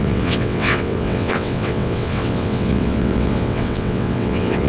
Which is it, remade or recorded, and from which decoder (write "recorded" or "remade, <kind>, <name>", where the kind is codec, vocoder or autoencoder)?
remade, vocoder, WaveNeXt